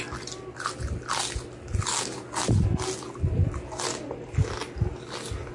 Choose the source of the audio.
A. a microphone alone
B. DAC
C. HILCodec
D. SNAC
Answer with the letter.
A